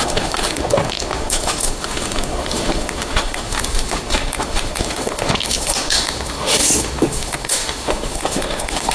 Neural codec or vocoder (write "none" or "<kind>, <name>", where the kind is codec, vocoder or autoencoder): autoencoder, DAC-VAE